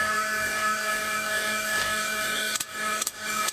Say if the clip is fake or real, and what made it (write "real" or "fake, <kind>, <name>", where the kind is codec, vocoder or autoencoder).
fake, codec, DAC